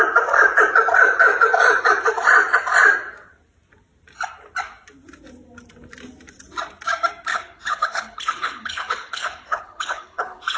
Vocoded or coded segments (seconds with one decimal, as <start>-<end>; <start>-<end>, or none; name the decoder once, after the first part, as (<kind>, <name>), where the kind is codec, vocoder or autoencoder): 7.3-10.6 (codec, HILCodec)